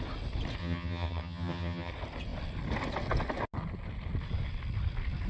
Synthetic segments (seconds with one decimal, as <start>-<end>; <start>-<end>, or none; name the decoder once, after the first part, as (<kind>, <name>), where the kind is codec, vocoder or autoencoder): 0.6-1.9 (vocoder, HiFi-GAN)